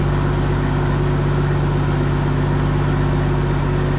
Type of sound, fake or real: real